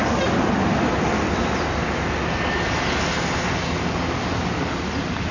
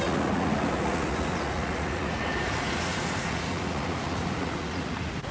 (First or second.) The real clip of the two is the first